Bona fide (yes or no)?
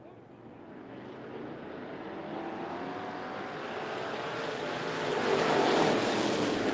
yes